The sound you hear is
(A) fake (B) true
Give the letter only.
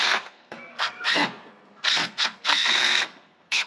A